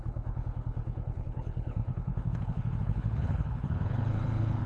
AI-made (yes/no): yes